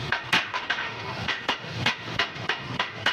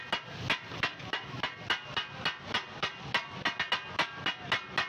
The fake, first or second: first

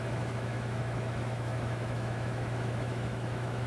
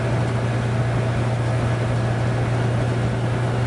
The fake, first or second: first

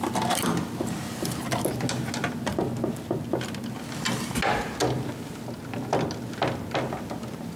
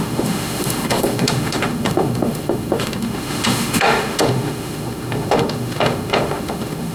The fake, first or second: second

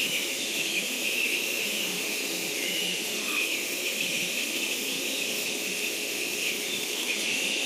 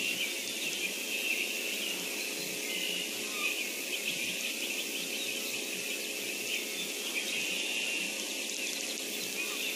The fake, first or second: first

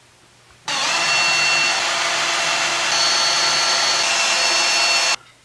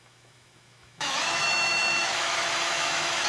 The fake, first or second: second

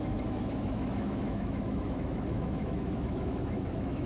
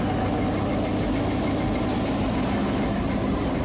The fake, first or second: first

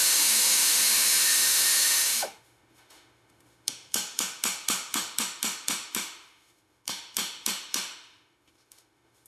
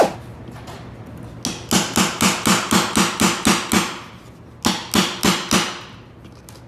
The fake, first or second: first